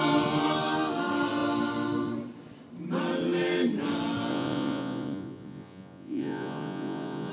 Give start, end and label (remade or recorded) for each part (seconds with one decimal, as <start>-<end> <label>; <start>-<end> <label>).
0.0-4.3 recorded; 4.3-7.3 remade